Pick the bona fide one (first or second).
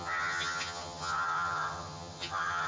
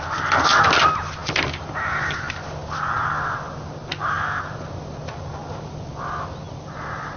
second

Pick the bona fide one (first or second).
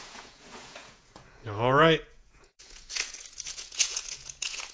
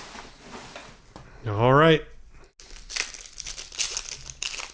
second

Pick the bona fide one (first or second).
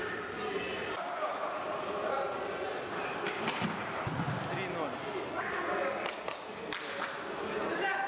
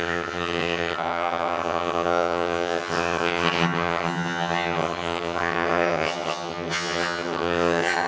first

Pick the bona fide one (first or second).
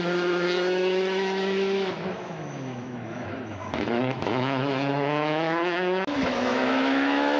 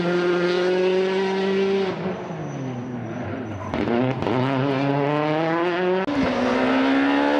second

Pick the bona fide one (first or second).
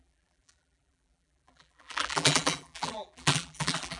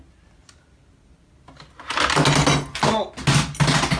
second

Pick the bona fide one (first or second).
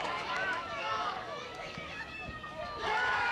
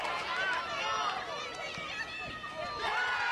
second